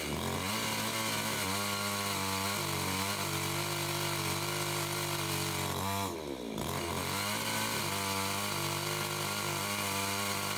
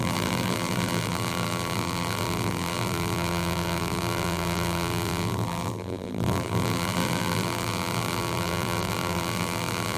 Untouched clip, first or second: first